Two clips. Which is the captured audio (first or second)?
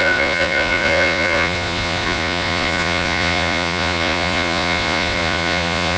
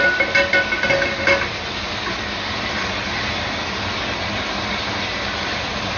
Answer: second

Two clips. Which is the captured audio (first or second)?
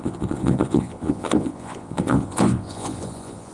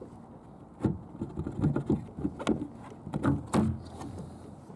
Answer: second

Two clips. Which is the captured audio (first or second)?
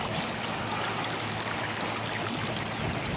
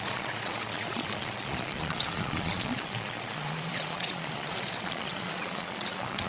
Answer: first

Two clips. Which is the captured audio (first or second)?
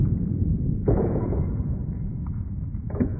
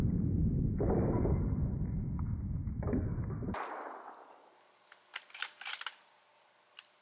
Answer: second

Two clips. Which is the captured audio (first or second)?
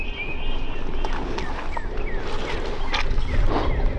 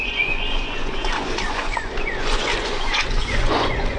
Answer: first